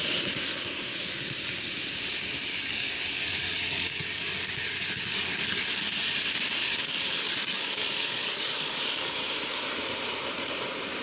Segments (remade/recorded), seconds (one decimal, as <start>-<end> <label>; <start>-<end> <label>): 0.0-2.5 recorded; 2.5-5.6 remade; 5.6-6.6 recorded; 6.6-9.3 remade; 9.3-11.0 recorded